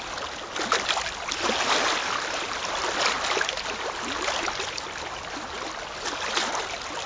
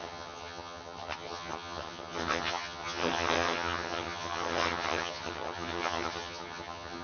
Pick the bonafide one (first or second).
first